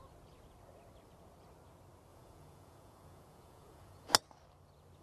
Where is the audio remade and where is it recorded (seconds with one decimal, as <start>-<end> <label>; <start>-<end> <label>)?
0.0-2.1 recorded; 2.1-4.1 remade; 4.1-5.0 recorded